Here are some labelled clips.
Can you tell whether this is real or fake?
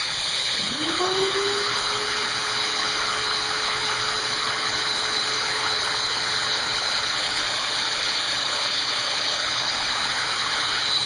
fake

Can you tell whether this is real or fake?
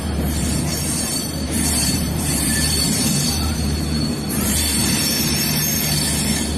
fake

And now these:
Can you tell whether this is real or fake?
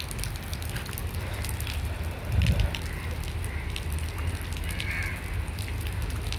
real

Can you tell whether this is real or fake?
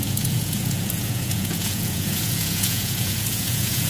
fake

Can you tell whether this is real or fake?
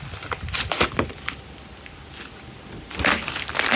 real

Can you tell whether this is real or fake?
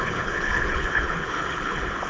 fake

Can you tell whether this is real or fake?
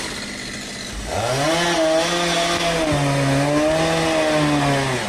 real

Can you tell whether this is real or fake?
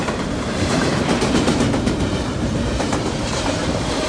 fake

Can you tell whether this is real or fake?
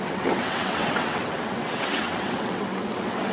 fake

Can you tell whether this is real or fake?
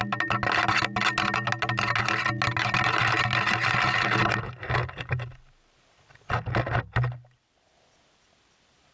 real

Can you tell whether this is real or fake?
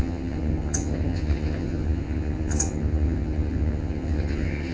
fake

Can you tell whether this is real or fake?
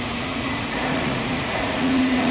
fake